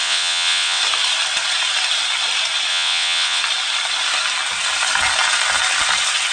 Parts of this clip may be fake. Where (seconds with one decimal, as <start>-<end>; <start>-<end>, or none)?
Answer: 0.0-0.8; 2.7-3.4